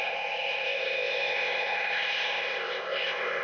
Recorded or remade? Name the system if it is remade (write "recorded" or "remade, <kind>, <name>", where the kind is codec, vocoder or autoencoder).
remade, codec, ZipCodec